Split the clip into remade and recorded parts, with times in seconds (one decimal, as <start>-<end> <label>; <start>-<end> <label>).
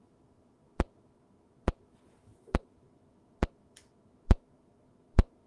0.0-5.5 remade